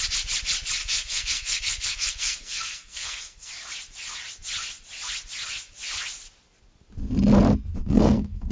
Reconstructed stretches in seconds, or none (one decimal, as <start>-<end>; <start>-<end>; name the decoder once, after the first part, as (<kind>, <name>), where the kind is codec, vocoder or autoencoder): 0.8-3.5 (codec, SNAC); 7.8-8.5